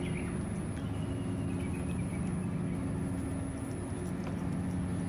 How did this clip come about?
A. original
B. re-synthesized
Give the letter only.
A